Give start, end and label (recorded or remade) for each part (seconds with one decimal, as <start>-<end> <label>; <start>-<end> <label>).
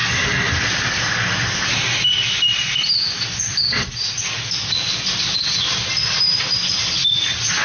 0.0-7.6 recorded